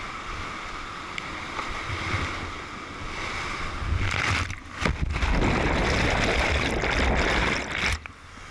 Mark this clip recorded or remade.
recorded